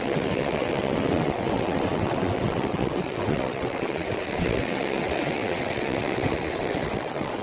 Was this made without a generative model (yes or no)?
no